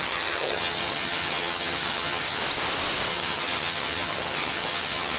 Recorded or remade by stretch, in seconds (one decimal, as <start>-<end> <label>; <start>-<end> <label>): 0.0-2.4 remade; 2.4-3.1 recorded; 3.1-5.2 remade